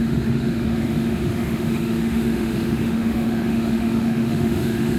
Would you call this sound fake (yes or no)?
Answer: yes